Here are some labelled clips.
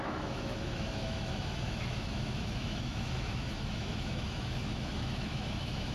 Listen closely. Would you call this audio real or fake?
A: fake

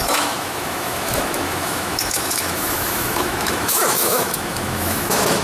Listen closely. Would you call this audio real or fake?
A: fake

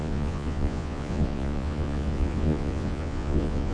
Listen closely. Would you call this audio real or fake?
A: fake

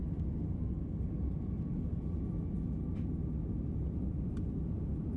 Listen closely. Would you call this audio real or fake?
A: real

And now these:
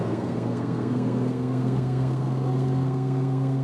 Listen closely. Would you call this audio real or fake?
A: fake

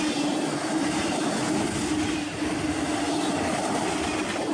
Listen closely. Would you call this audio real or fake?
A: real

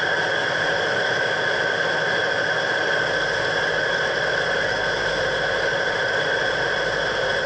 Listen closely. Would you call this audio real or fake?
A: real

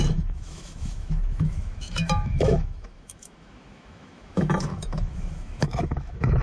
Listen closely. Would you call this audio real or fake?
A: fake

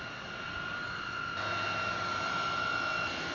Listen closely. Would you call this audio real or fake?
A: real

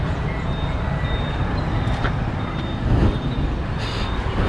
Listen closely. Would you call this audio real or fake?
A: real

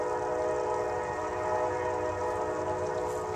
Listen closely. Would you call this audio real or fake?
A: real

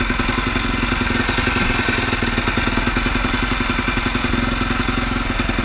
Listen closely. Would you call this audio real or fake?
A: real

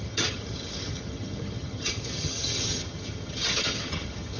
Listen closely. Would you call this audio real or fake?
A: fake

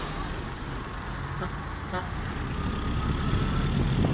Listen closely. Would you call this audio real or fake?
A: real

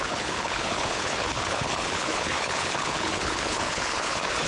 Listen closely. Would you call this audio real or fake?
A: fake